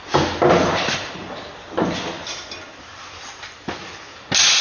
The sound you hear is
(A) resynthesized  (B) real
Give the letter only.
B